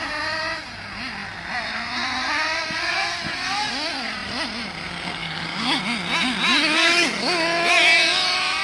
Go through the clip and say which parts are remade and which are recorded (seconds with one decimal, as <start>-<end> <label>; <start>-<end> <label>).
0.0-5.2 recorded; 5.2-5.8 remade; 5.8-8.6 recorded

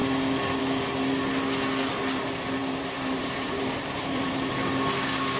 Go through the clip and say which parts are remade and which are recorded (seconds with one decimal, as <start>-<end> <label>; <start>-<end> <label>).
0.0-2.6 recorded; 2.6-4.5 remade; 4.5-5.4 recorded

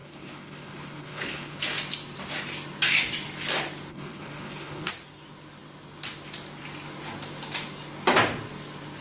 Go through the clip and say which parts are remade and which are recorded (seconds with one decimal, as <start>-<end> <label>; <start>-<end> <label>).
0.0-1.6 remade; 1.6-3.9 recorded; 3.9-4.9 remade; 4.9-9.0 recorded

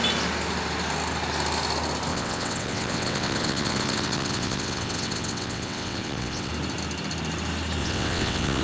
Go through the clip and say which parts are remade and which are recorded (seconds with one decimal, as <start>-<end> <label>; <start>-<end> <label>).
0.0-2.1 recorded; 2.1-6.5 remade; 6.5-7.8 recorded; 7.8-8.6 remade

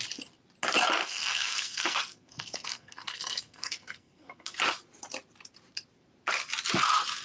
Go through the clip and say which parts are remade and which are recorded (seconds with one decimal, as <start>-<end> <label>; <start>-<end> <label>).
0.0-1.0 recorded; 1.0-4.6 remade; 4.6-7.2 recorded